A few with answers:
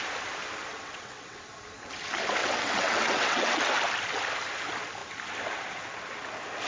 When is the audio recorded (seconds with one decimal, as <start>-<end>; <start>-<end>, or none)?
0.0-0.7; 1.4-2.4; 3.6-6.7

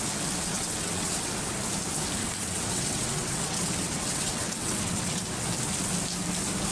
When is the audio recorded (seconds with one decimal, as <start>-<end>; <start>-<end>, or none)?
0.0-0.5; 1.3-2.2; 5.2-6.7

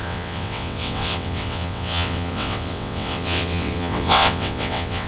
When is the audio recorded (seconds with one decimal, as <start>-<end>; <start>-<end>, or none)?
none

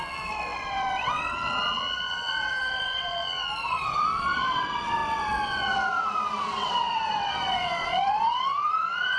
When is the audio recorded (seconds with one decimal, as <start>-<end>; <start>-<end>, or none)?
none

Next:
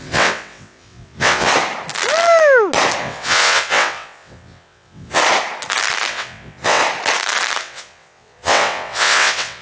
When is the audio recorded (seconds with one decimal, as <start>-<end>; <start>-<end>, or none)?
1.5-3.0; 5.2-6.1; 6.8-7.6